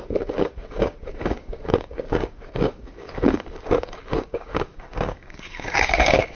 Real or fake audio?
fake